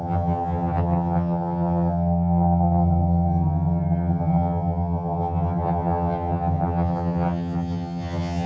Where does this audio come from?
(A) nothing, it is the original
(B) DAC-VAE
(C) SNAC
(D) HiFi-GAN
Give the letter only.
D